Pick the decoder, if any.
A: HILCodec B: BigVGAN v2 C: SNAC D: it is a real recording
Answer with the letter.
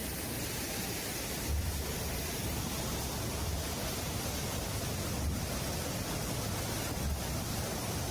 D